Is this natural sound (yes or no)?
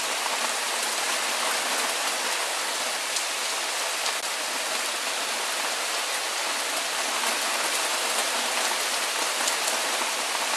yes